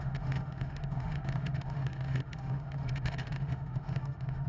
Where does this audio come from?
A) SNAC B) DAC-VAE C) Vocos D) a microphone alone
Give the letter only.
B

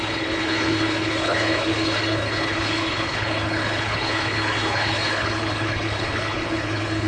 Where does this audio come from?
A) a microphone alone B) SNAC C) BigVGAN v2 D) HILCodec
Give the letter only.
D